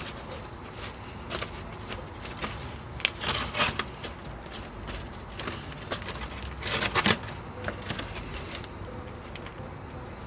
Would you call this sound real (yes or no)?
yes